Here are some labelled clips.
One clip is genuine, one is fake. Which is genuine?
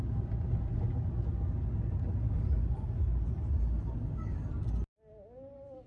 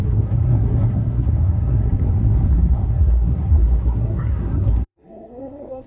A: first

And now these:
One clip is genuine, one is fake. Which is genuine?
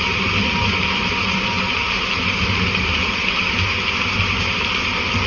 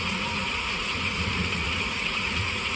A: first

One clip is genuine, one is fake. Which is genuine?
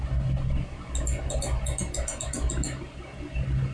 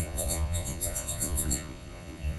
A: first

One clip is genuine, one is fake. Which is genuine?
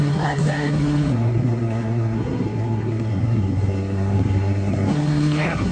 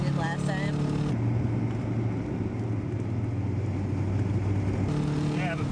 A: second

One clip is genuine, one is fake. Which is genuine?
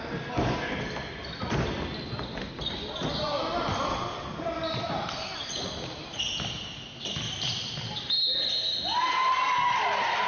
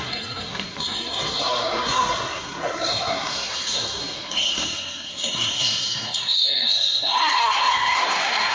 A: first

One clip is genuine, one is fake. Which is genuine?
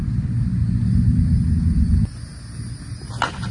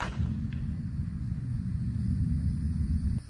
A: first